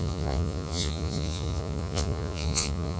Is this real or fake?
fake